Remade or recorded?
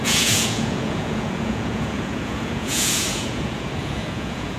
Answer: remade